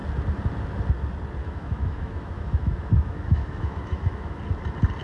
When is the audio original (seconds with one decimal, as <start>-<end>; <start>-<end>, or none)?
0.0-1.4; 4.4-5.0